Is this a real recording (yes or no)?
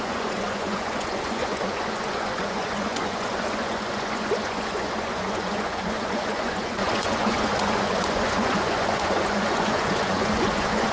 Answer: no